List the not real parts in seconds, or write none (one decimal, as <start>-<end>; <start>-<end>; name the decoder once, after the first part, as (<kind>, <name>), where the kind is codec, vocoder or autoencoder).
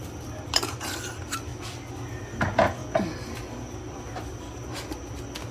none